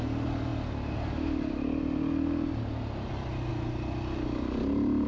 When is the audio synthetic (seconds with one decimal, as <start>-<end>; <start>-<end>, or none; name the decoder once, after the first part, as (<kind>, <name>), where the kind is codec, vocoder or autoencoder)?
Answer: none